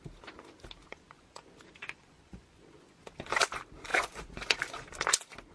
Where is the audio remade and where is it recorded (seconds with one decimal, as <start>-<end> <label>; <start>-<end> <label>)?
0.0-0.8 recorded; 0.8-3.0 remade; 3.0-3.9 recorded; 3.9-4.9 remade; 4.9-5.5 recorded